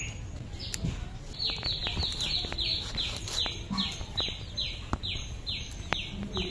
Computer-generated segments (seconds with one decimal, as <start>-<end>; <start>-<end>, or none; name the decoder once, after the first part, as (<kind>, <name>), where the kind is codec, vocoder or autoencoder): none